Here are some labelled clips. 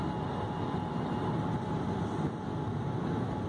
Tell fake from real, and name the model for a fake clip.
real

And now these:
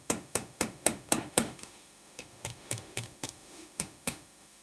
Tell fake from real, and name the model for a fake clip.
fake, autoencoder, DAC-VAE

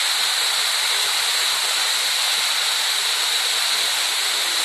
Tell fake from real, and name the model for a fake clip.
real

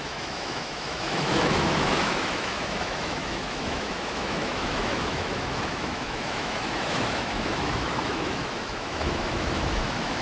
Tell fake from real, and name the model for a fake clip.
fake, autoencoder, DAC-VAE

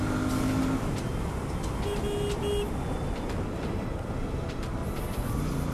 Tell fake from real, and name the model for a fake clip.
real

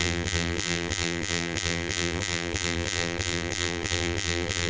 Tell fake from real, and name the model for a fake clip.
fake, vocoder, BigVGAN v2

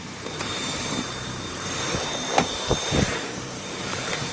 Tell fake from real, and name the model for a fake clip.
fake, vocoder, BigVGAN v2